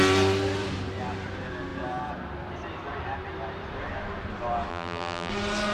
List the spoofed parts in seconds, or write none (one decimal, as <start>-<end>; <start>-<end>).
4.7-5.3